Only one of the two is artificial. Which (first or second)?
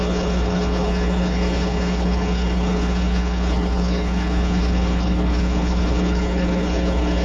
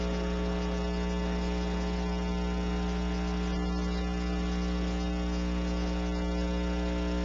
first